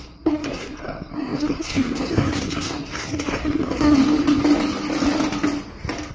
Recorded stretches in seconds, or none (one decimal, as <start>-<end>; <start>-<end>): 4.0-6.1